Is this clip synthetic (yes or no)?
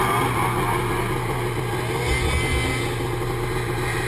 no